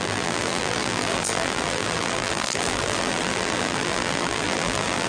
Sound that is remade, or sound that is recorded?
remade